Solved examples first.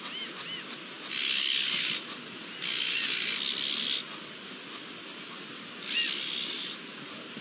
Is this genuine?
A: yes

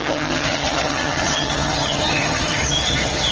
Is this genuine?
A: no